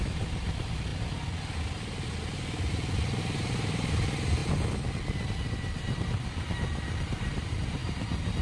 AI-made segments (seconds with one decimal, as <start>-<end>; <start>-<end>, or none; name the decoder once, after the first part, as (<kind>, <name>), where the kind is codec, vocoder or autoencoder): 0.0-0.9 (vocoder, BigVGAN v2); 3.2-4.4; 5.5-8.4